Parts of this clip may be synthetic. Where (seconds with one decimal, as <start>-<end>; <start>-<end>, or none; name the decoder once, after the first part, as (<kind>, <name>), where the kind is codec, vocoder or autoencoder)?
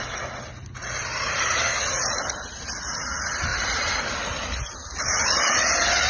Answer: none